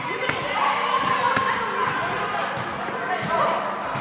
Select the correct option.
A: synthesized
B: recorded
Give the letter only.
B